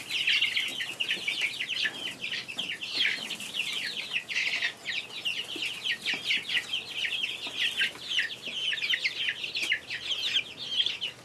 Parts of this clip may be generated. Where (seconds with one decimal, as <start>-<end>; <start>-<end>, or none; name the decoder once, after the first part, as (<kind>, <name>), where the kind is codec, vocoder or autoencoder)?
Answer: none